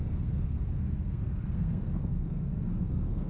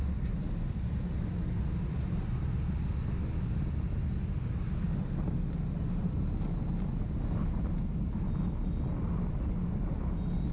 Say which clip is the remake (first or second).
first